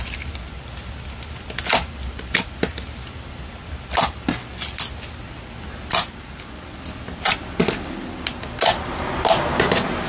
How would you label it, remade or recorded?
recorded